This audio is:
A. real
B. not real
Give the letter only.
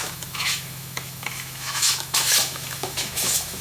B